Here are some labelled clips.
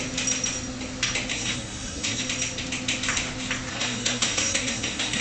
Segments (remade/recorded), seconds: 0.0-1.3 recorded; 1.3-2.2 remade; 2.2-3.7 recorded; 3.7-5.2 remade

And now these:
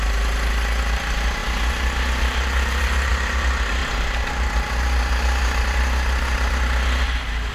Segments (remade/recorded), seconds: 0.0-7.5 recorded

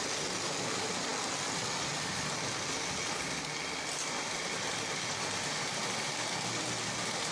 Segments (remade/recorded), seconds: 0.0-7.3 recorded

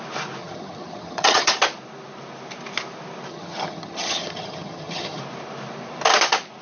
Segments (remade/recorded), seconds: 0.0-0.4 recorded; 0.4-1.5 remade; 1.5-3.3 recorded; 3.3-5.2 remade; 5.2-6.6 recorded